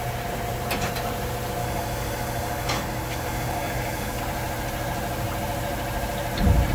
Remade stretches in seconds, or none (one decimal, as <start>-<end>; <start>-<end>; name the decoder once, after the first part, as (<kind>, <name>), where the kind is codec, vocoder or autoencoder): 1.6-4.2 (codec, DAC)